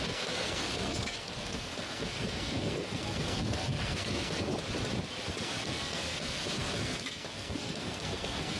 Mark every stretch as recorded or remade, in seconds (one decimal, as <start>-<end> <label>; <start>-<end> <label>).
0.0-4.5 remade; 4.5-5.3 recorded; 5.3-8.6 remade